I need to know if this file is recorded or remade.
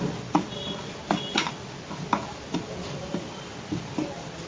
recorded